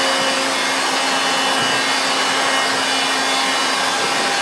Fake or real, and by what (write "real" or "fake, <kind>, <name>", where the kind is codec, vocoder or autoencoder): real